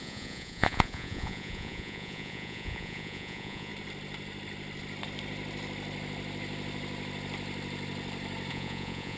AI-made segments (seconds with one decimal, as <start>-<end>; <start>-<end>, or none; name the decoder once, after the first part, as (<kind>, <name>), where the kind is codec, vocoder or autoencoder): 0.0-3.7 (vocoder, Vocos); 8.5-9.2